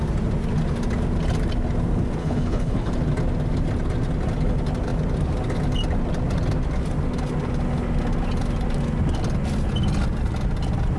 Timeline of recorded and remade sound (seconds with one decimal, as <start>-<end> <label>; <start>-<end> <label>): 0.0-2.2 recorded; 2.2-2.9 remade; 2.9-11.0 recorded